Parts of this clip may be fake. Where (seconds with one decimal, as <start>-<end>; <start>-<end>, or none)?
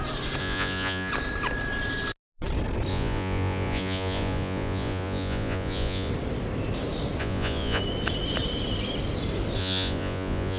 0.4-1.1; 2.9-6.1; 7.2-7.8; 9.6-10.6